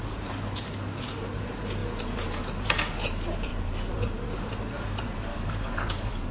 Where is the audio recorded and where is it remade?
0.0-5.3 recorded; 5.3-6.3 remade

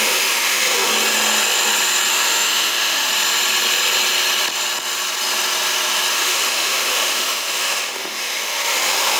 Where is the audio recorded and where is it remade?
0.0-0.9 remade; 0.9-2.1 recorded; 2.1-3.1 remade; 3.1-6.1 recorded; 6.1-9.2 remade

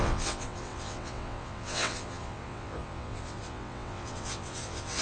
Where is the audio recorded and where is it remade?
0.0-5.0 remade